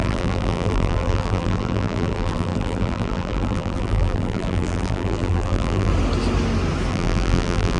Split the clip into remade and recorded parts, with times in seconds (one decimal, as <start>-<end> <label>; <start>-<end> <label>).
0.0-5.9 remade; 5.9-6.9 recorded; 6.9-7.8 remade